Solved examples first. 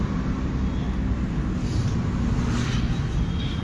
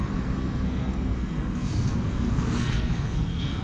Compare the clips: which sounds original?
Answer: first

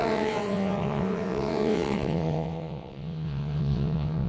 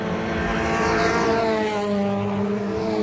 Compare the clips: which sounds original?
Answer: second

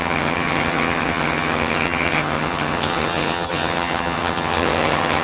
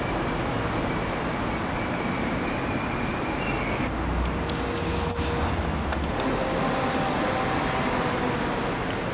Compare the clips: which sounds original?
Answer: second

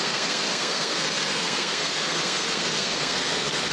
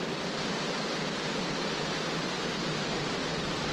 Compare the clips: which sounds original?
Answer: second